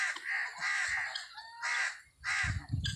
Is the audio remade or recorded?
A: recorded